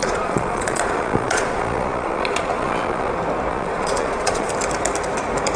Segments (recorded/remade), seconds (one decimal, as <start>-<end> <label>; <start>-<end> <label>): 0.0-3.1 remade; 3.1-3.5 recorded; 3.5-4.5 remade; 4.5-5.6 recorded